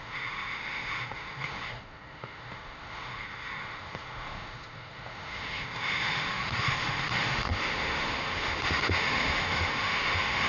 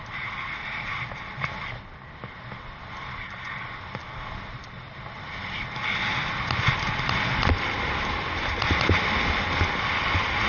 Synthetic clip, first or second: first